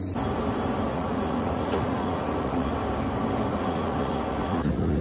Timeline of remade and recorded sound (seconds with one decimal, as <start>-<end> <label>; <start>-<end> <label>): 0.0-0.9 recorded; 0.9-2.7 remade; 2.7-3.5 recorded; 3.5-5.0 remade